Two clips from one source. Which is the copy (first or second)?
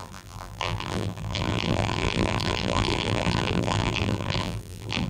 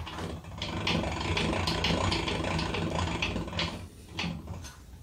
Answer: first